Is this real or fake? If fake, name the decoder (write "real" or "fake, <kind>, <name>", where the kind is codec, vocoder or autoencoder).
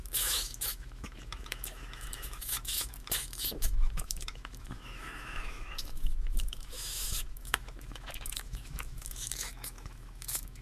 fake, autoencoder, DAC-VAE